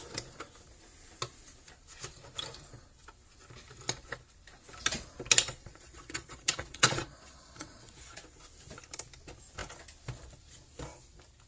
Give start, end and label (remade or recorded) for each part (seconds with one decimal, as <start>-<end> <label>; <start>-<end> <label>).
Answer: 0.0-5.6 recorded; 5.6-8.2 remade; 8.2-11.5 recorded